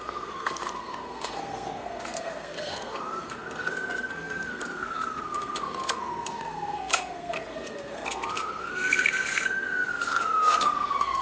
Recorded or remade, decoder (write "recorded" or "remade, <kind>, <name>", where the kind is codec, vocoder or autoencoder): remade, codec, SNAC